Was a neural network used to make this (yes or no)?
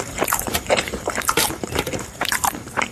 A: yes